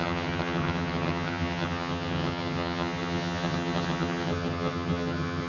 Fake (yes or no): yes